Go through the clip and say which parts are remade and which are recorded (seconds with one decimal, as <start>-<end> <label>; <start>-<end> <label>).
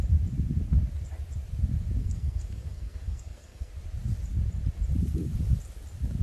0.0-2.0 recorded; 2.0-3.7 remade; 3.7-6.2 recorded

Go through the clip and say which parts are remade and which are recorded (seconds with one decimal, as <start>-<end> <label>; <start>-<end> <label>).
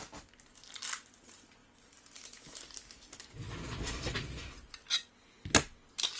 0.0-6.2 recorded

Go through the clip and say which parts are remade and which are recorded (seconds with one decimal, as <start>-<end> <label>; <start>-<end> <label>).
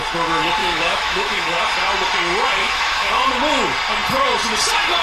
0.0-0.6 recorded; 0.6-1.6 remade; 1.6-2.6 recorded; 2.6-3.1 remade; 3.1-5.0 recorded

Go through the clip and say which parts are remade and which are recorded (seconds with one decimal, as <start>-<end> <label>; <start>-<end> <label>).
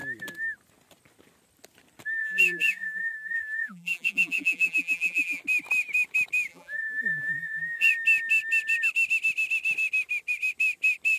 0.0-2.2 recorded; 2.2-5.4 remade; 5.4-6.5 recorded; 6.5-7.9 remade; 7.9-11.2 recorded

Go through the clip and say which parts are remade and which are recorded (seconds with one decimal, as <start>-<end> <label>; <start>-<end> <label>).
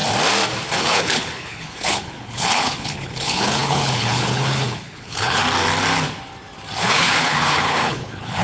0.0-0.8 recorded; 0.8-5.4 remade; 5.4-6.8 recorded; 6.8-8.4 remade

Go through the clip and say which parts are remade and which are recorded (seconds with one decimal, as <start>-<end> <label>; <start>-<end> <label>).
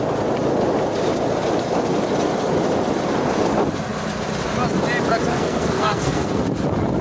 0.0-5.3 recorded; 5.3-6.4 remade; 6.4-7.0 recorded